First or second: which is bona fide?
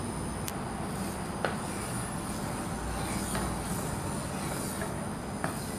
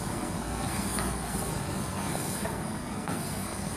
first